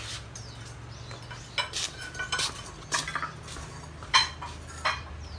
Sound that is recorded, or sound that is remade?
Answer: recorded